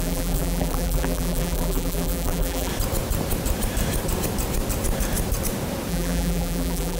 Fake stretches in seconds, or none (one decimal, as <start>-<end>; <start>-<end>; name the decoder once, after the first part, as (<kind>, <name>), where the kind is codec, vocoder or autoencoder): 0.0-2.7 (vocoder, BigVGAN v2); 5.9-7.0

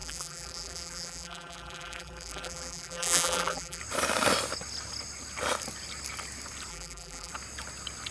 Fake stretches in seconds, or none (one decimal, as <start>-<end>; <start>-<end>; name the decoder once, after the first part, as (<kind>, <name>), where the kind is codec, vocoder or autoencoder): 0.0-3.8 (vocoder, BigVGAN v2); 6.7-7.3

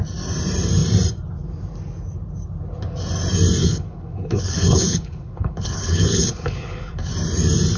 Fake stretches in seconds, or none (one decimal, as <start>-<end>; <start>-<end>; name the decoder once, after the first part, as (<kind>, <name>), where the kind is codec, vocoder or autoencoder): 3.6-7.1 (codec, HILCodec)

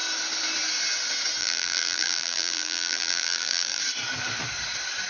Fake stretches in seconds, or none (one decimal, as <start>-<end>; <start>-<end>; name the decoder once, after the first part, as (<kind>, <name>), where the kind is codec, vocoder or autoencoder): 1.4-3.8 (vocoder, BigVGAN v2)

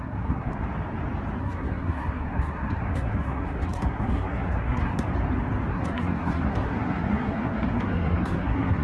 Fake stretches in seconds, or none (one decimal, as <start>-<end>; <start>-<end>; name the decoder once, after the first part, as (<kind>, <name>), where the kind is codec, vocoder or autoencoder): 0.0-0.5 (codec, SNAC); 1.4-5.1; 5.7-8.8

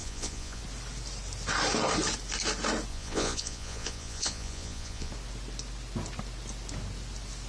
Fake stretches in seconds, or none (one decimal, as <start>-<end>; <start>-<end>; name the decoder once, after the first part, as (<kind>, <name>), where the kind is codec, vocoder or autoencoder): 0.0-0.6 (vocoder, Vocos); 2.9-5.1

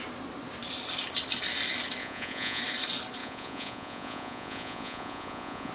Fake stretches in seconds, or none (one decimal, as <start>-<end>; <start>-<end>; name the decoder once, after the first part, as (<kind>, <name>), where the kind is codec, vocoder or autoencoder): 2.0-2.6 (vocoder, Vocos); 3.2-5.7